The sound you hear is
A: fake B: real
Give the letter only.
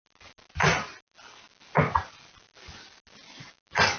B